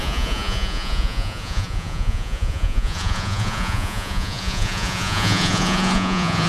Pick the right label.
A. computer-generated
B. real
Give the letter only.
A